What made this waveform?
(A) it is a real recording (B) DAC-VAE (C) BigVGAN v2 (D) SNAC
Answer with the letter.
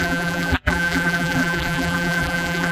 C